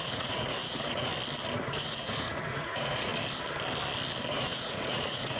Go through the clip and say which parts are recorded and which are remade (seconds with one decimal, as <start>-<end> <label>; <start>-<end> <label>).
0.0-1.1 remade; 1.1-1.6 recorded; 1.6-3.1 remade; 3.1-4.3 recorded; 4.3-5.4 remade